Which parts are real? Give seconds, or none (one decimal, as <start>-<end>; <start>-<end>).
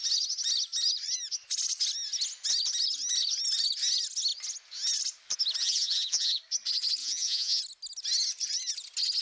0.0-5.6; 6.4-7.0; 7.6-9.2